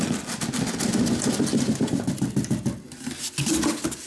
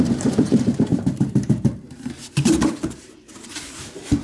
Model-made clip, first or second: second